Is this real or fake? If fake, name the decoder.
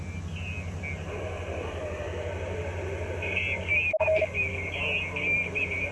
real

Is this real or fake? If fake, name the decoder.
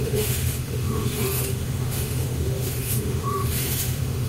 fake, autoencoder, DAC-VAE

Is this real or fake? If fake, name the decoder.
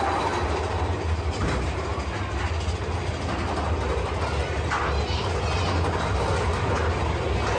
real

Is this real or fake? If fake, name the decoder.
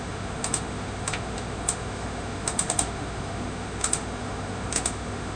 fake, autoencoder, DAC-VAE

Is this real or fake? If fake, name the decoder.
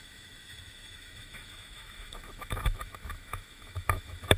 fake, autoencoder, DAC-VAE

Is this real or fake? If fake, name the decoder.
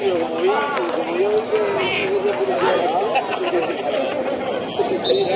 real